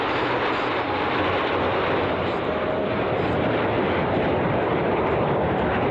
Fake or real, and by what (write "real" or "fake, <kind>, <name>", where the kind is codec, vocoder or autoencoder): real